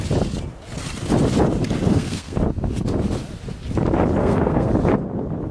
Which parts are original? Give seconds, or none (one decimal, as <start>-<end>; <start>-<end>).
0.0-1.9; 2.4-4.2; 4.7-5.5